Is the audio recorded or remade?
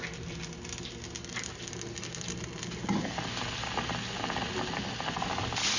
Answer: recorded